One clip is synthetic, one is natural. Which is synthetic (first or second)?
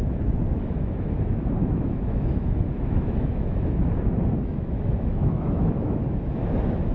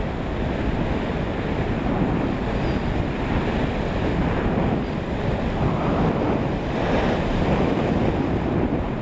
first